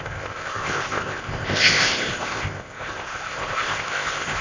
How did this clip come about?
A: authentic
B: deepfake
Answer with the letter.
B